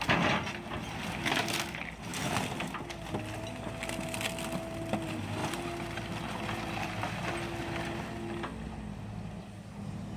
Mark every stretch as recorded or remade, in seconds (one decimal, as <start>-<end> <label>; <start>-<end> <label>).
0.0-10.2 recorded